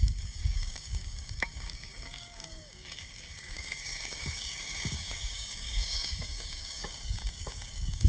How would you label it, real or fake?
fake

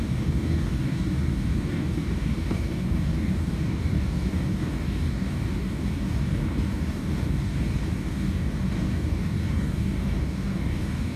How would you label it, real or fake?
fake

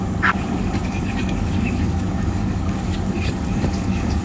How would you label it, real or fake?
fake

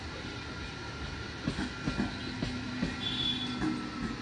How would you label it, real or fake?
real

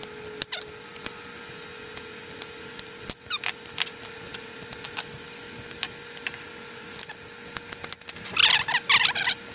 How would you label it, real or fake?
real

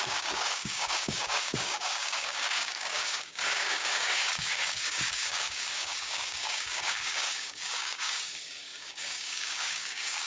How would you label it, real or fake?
fake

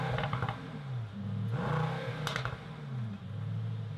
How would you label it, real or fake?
real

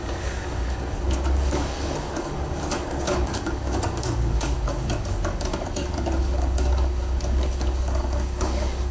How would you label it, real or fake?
fake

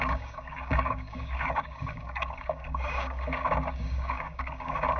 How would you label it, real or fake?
fake